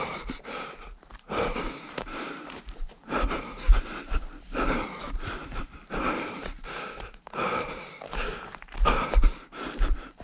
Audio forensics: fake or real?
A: fake